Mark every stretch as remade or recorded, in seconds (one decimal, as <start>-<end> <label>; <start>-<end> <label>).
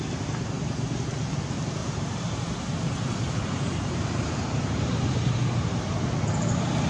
0.0-1.8 recorded; 1.8-5.9 remade; 5.9-6.9 recorded